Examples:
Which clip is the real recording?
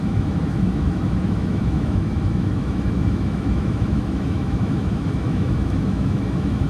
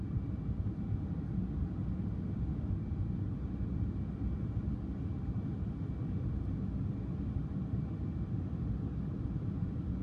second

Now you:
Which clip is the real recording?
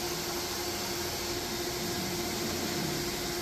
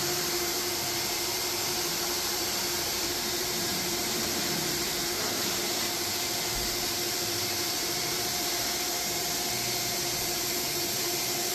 first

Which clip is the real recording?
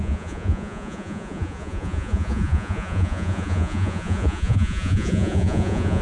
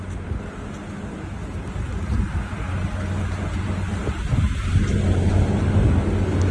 second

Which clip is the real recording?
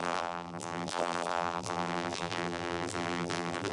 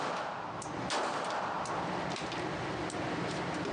second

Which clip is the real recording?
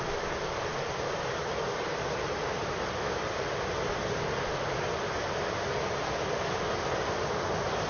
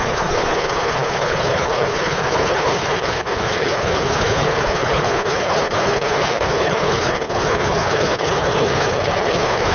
first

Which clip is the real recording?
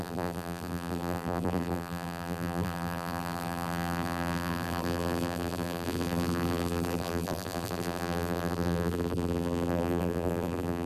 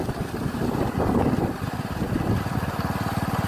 second